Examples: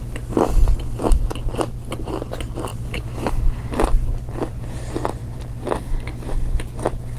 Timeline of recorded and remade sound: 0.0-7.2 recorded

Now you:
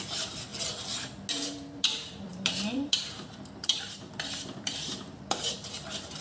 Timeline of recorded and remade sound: 0.0-0.5 remade; 0.5-1.3 recorded; 1.3-6.2 remade

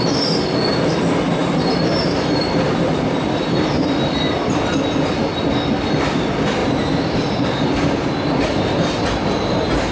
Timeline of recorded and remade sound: 0.0-1.4 recorded; 1.4-3.7 remade; 3.7-6.6 recorded; 6.6-7.6 remade; 7.6-9.9 recorded

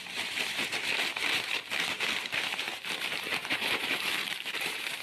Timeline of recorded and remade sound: 0.0-5.0 remade

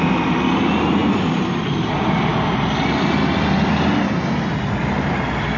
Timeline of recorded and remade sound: 0.0-5.6 recorded